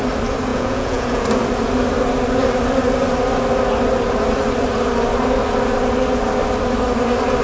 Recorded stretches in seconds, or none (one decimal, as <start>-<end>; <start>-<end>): 0.0-0.5; 1.2-7.4